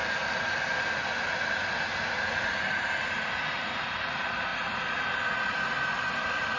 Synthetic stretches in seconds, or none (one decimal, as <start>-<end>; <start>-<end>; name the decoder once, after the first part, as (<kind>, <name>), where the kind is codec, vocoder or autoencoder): none